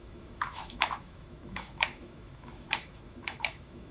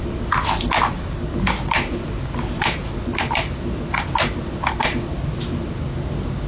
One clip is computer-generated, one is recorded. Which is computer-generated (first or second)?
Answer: first